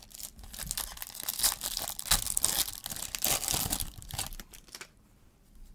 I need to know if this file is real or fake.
real